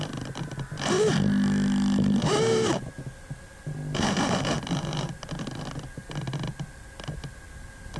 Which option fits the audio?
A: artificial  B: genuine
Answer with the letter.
B